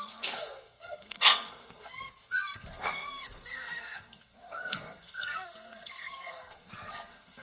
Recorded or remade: remade